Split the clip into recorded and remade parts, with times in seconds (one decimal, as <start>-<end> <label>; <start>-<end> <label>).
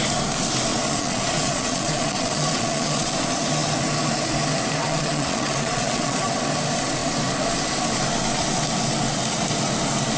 0.0-0.7 recorded; 0.7-3.1 remade; 3.1-4.8 recorded; 4.8-6.3 remade; 6.3-10.2 recorded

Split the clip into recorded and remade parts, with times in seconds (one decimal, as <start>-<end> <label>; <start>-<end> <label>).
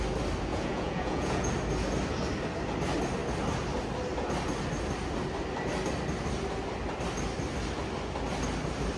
0.0-0.5 recorded; 0.5-1.5 remade; 1.5-9.0 recorded